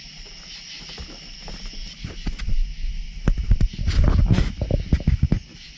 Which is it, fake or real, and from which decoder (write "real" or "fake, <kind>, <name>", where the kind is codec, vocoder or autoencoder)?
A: real